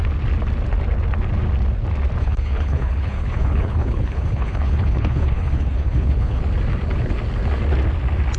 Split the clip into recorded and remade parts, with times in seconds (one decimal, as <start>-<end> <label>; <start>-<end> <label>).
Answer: 0.0-2.2 recorded; 2.2-6.4 remade; 6.4-8.4 recorded